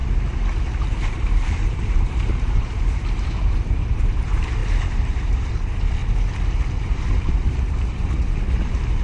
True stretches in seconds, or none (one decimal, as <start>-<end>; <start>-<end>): 0.0-0.8; 6.0-6.7